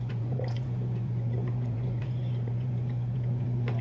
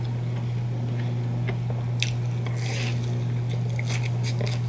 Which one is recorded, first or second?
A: second